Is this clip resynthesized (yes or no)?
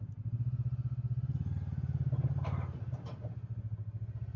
no